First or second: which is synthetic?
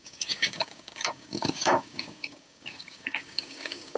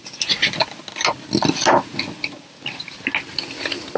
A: first